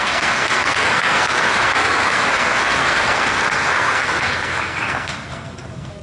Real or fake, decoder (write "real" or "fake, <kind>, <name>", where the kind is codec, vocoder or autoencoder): fake, codec, SNAC